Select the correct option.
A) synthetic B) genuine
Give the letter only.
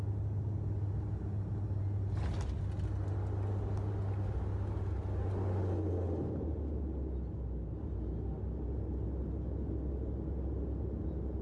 B